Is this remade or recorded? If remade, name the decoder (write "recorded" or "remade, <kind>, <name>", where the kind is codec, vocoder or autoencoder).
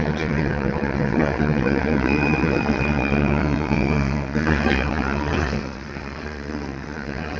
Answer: remade, vocoder, WaveNeXt